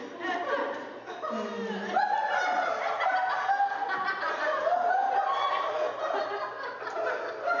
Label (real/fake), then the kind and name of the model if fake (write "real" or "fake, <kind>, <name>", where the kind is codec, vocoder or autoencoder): real